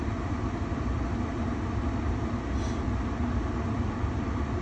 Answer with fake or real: real